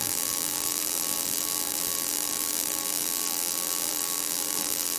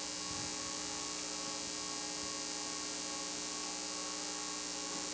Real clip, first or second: second